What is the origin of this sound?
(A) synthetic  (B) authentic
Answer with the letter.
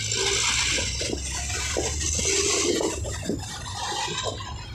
B